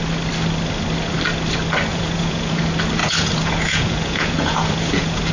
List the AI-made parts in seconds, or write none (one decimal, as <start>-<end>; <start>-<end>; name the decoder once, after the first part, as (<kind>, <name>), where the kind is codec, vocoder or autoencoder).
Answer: 1.9-2.6 (vocoder, Vocos); 3.0-5.3